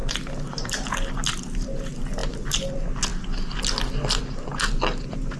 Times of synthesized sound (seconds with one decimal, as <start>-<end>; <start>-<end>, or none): 0.0-1.1